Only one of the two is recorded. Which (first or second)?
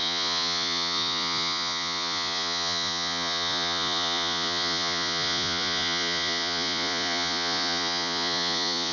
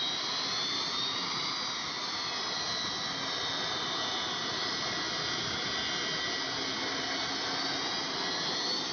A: second